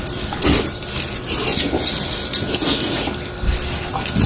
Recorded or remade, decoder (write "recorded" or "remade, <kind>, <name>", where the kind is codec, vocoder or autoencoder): recorded